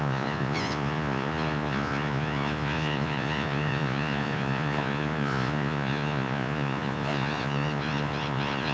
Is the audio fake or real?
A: fake